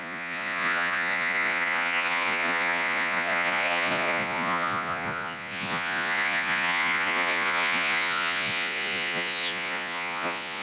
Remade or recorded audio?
remade